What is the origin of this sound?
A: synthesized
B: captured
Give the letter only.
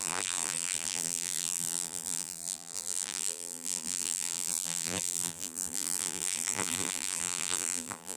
A